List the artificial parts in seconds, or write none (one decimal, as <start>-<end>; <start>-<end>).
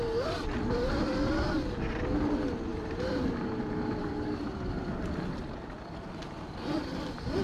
2.7-3.3; 4.0-4.9